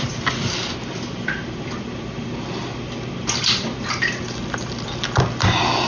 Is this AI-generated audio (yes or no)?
no